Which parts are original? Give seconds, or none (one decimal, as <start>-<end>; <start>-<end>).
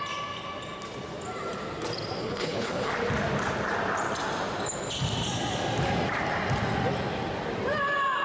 0.0-2.2; 2.9-8.2